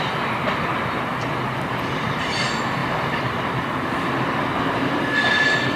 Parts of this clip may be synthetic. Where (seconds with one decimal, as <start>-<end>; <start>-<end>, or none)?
0.0-5.8